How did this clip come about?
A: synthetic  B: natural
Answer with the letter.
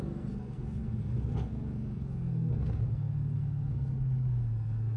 A